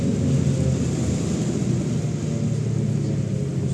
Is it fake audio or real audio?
real